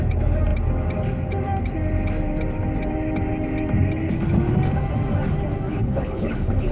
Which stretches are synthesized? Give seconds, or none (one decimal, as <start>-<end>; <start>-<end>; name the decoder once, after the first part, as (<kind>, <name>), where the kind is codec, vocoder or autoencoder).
5.7-6.7 (codec, HILCodec)